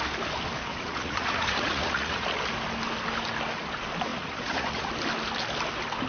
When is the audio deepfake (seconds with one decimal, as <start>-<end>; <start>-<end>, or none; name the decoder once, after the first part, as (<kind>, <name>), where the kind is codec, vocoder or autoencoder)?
0.7-2.4 (vocoder, Vocos); 4.1-4.9